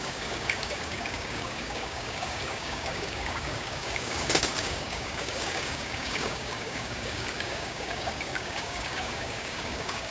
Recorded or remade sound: remade